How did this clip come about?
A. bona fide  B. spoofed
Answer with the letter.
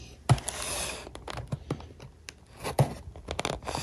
A